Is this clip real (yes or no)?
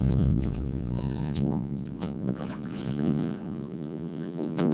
no